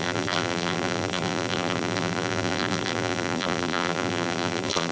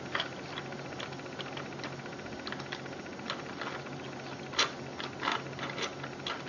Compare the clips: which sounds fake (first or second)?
first